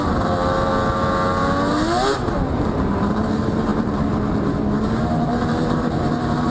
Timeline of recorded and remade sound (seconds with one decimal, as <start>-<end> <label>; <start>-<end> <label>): 0.0-0.7 remade; 0.7-1.7 recorded; 1.7-6.5 remade